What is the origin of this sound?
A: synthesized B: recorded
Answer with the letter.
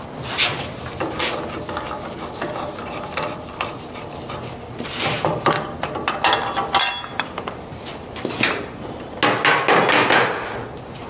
B